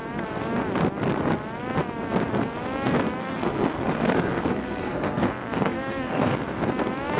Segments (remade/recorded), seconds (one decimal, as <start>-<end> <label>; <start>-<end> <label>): 0.0-3.2 recorded; 3.2-6.7 remade; 6.7-7.2 recorded